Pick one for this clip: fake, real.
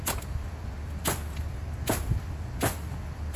real